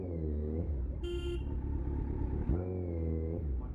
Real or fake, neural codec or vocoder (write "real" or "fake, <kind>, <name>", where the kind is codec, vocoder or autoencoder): real